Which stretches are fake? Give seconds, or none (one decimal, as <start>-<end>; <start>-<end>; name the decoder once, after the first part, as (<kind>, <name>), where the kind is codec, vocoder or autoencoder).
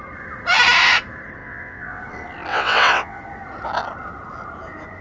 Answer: 1.4-2.0 (vocoder, WaveNeXt); 2.5-3.2